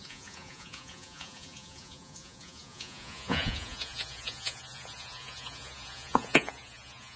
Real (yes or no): no